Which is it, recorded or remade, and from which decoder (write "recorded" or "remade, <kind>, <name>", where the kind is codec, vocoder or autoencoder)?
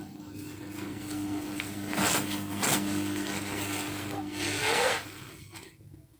remade, codec, SNAC